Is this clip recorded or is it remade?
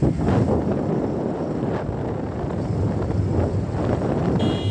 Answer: recorded